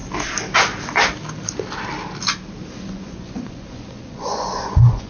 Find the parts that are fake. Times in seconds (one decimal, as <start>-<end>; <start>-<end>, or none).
2.8-5.1